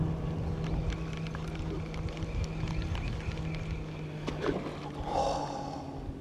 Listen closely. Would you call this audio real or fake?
real